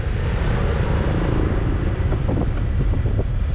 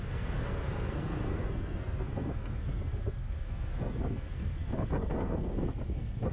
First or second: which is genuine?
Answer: first